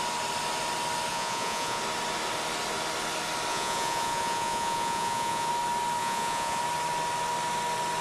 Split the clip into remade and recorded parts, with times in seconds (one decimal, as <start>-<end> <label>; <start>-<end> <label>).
0.0-1.1 recorded; 1.1-1.8 remade; 1.8-3.5 recorded; 3.5-5.5 remade; 5.5-6.0 recorded; 6.0-6.6 remade; 6.6-8.0 recorded